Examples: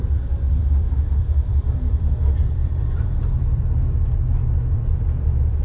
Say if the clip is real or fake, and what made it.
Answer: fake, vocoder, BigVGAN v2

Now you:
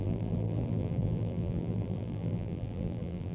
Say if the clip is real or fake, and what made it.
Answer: fake, vocoder, BigVGAN v2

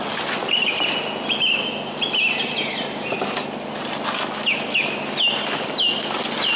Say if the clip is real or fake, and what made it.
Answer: real